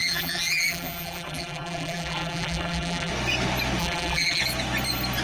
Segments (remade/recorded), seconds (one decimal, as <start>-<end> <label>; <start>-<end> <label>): 0.0-3.1 remade; 3.1-3.8 recorded; 3.8-4.4 remade; 4.4-5.2 recorded